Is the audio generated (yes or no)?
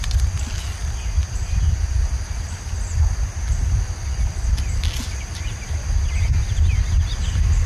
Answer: no